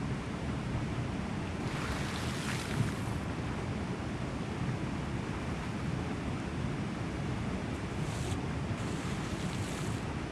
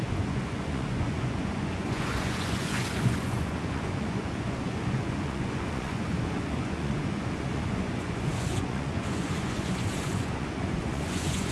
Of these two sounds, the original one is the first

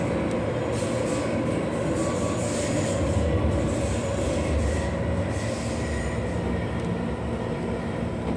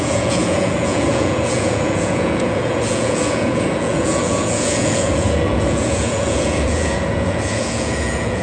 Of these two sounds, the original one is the first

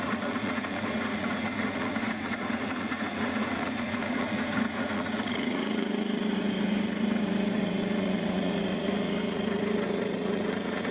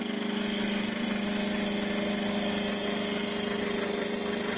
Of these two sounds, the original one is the second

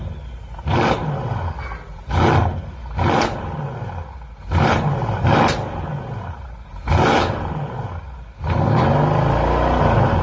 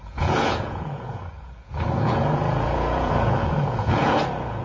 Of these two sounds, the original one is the first